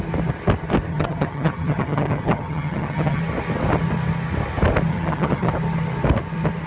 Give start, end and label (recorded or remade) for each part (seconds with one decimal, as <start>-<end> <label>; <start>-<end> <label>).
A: 0.0-0.9 recorded; 0.9-3.2 remade; 3.2-4.9 recorded; 4.9-5.5 remade; 5.5-6.7 recorded